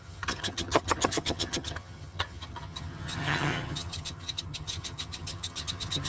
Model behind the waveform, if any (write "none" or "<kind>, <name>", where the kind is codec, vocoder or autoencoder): vocoder, HiFi-GAN